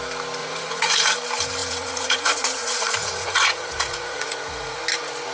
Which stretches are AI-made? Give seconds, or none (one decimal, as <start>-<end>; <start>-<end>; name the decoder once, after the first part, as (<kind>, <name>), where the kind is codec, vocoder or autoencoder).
0.4-1.1 (vocoder, Vocos); 1.6-4.8